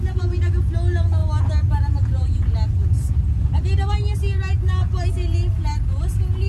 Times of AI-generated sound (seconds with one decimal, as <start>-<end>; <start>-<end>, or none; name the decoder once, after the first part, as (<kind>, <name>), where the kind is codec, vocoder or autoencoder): none